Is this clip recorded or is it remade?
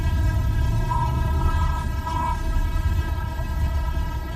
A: remade